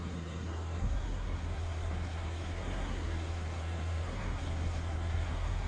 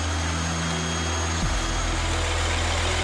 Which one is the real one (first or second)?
second